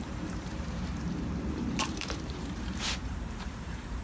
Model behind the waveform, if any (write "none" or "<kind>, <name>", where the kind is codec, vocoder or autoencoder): vocoder, BigVGAN v2